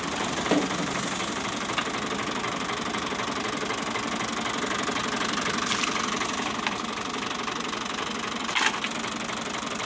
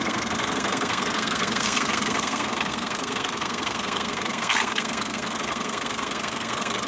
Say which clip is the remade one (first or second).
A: second